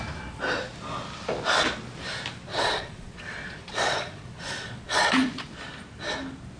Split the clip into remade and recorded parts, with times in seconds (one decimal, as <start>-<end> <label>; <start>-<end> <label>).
0.0-2.5 recorded; 2.5-5.5 remade; 5.5-6.6 recorded